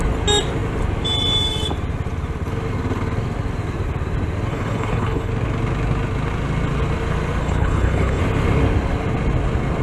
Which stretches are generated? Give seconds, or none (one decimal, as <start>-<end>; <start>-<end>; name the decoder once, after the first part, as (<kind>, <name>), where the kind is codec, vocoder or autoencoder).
4.5-5.3 (codec, HILCodec); 7.4-8.2